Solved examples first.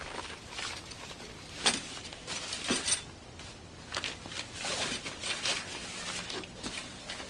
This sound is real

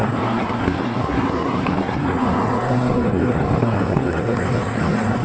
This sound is fake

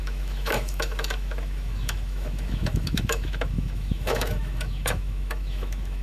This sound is fake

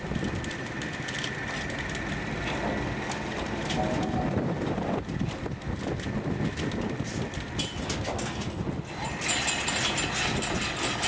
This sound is real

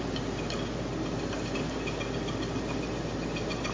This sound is real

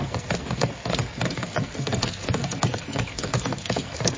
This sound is fake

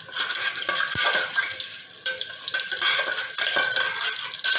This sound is real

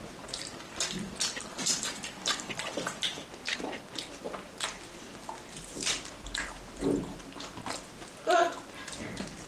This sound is fake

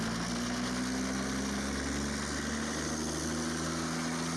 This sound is real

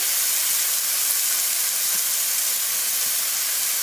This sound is real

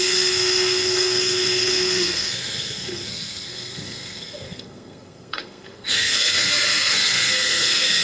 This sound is fake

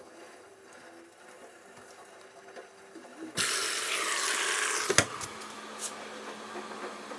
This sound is real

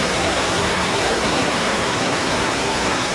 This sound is fake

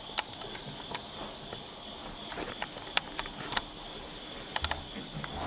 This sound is real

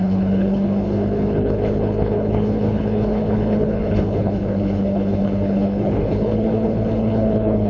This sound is fake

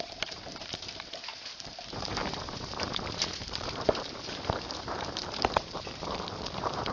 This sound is fake